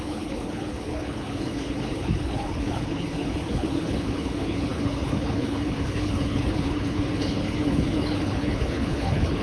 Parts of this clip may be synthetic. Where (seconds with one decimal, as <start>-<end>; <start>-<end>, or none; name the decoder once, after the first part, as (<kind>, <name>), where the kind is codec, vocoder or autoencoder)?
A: 0.0-9.4 (codec, HILCodec)